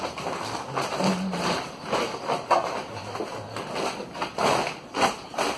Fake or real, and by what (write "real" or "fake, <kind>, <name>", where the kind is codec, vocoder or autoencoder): real